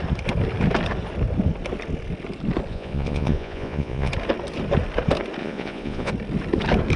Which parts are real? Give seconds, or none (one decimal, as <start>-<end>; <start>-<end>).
0.0-2.7; 4.1-5.4; 6.1-7.0